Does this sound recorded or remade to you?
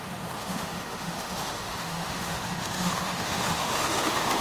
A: remade